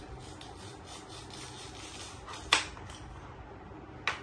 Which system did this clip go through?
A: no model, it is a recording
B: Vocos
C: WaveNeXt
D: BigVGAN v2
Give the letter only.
A